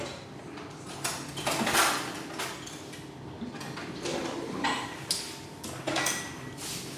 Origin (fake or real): real